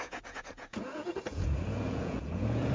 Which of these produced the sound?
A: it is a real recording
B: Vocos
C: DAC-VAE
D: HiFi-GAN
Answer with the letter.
B